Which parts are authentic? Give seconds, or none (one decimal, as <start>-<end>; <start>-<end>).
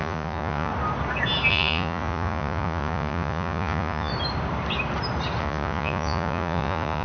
0.7-1.5; 4.1-5.4